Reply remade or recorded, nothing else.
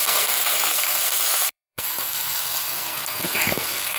remade